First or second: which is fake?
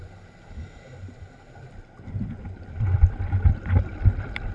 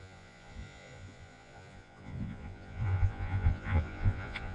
second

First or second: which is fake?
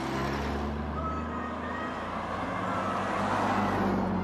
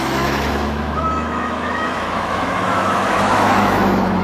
second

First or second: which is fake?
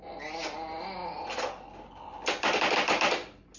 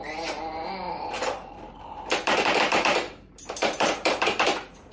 second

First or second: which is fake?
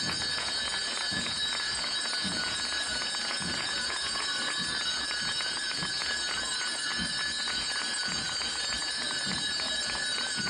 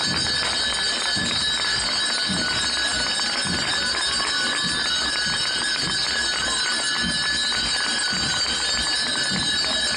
first